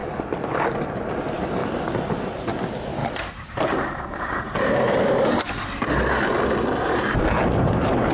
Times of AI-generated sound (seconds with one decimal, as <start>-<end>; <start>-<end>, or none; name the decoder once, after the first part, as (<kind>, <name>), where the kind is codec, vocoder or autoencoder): 3.0-5.5 (vocoder, BigVGAN v2)